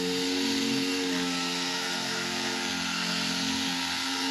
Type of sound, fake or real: fake